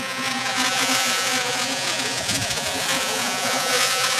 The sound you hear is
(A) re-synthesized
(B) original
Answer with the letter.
A